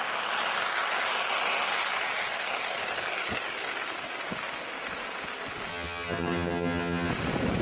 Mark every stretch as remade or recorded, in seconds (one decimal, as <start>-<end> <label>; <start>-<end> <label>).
0.0-5.7 recorded; 5.7-7.1 remade; 7.1-7.6 recorded